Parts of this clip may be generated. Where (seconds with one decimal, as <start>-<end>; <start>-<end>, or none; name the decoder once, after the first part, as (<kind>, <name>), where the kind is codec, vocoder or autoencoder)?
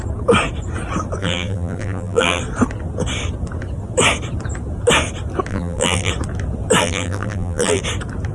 1.2-2.4 (vocoder, BigVGAN v2); 5.5-6.1; 6.8-7.8